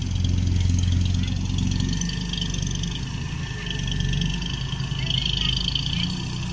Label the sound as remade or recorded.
recorded